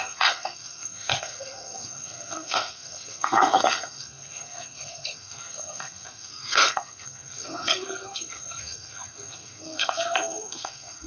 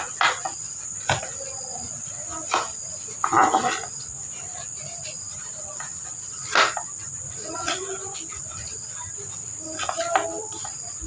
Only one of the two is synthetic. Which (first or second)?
first